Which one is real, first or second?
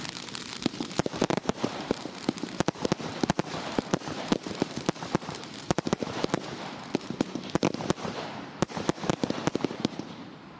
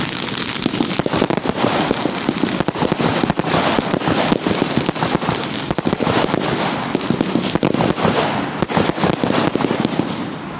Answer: second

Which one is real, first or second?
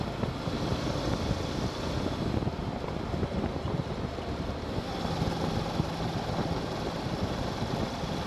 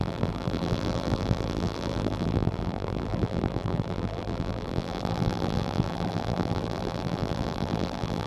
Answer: first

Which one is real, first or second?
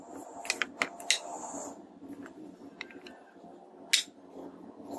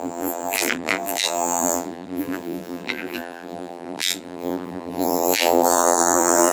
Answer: first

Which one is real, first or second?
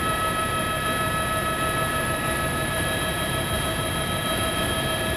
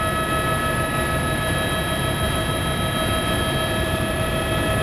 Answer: second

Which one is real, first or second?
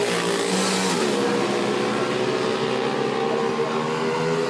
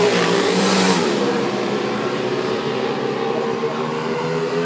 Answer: first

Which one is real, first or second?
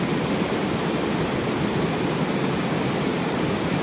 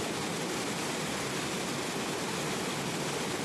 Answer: second